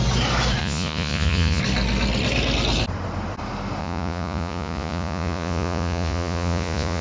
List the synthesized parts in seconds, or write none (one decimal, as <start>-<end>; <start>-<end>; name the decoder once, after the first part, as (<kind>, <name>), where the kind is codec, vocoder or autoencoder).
0.6-1.6 (vocoder, Vocos); 3.8-7.0